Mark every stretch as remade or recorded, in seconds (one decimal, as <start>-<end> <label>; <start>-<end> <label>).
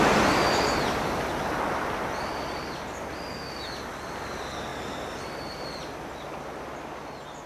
0.0-7.5 recorded